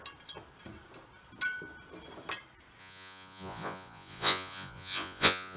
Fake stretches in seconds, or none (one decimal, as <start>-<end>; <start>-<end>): 2.8-5.6